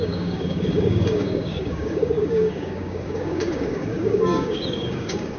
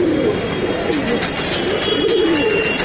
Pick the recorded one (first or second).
second